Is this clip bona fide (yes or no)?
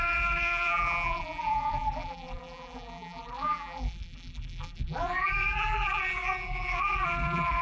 no